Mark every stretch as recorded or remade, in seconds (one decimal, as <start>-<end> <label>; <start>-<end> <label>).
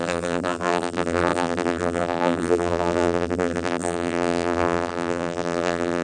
0.0-6.0 remade